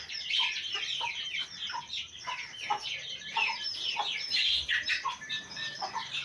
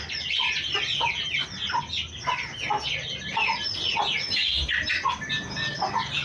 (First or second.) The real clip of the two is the second